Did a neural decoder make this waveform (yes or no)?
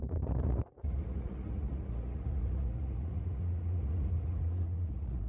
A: yes